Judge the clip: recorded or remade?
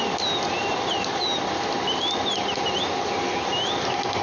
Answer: recorded